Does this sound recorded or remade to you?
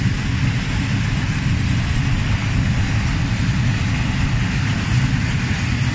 recorded